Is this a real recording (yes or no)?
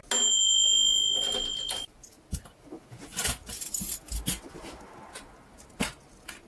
yes